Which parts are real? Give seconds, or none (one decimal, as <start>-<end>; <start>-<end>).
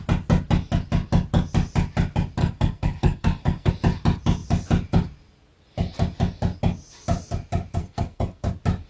0.0-2.4; 3.7-7.8; 8.5-8.9